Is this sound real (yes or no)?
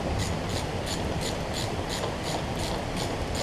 yes